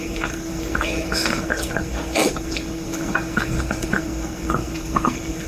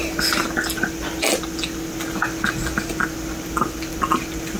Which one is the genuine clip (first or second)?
second